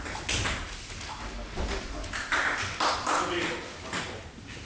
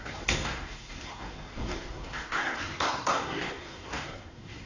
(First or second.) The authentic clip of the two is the first